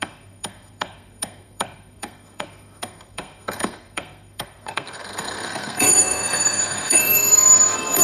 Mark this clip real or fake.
fake